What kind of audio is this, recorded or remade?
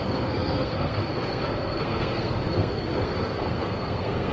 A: remade